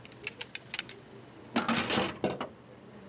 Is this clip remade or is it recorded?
recorded